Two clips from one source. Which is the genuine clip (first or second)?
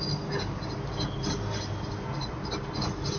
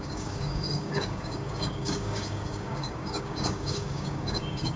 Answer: first